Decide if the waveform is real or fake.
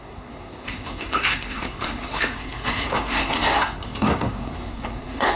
fake